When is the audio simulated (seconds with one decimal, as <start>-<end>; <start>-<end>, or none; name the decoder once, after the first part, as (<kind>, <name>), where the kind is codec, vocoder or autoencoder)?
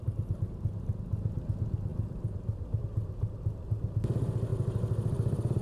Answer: 1.9-2.8 (vocoder, BigVGAN v2); 4.5-5.6